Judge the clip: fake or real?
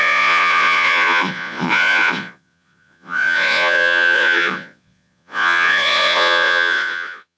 fake